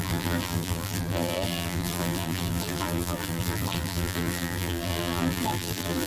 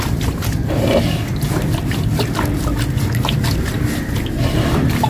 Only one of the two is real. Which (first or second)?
second